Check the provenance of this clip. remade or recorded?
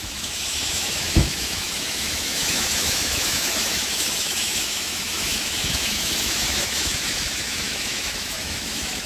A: remade